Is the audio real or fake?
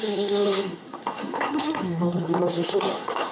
fake